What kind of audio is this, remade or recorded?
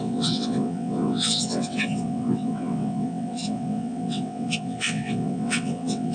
remade